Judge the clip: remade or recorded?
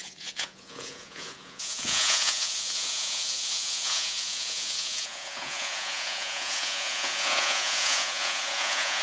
remade